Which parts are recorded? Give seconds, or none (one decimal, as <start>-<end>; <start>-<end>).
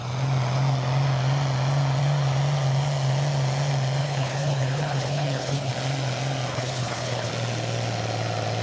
0.0-4.0; 5.7-6.5; 7.3-8.6